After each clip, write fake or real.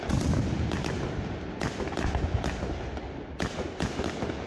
real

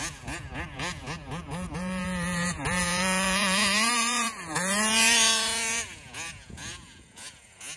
fake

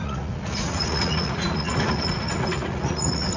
fake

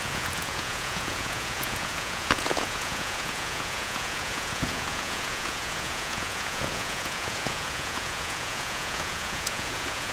fake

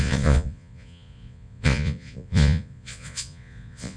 fake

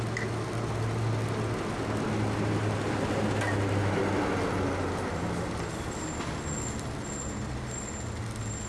real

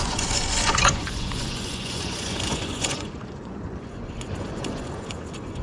fake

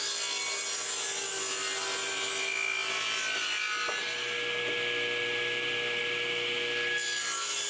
real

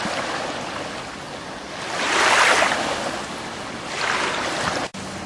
real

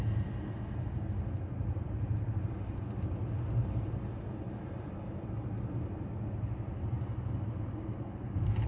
real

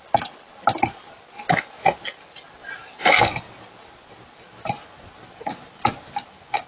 real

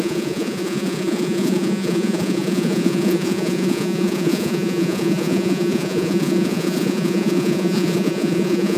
fake